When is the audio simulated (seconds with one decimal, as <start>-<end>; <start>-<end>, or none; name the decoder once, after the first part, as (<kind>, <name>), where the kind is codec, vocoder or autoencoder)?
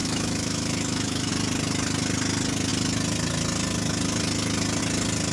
0.0-1.3 (autoencoder, DAC-VAE)